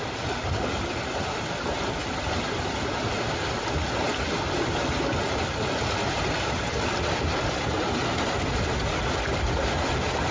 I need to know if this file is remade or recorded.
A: recorded